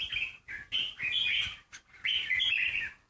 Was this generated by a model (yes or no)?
no